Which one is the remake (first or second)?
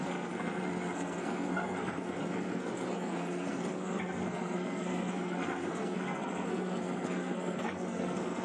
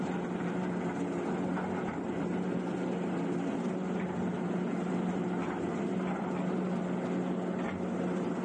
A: first